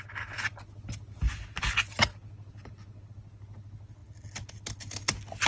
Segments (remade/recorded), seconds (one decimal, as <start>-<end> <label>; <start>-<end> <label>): 0.0-5.5 recorded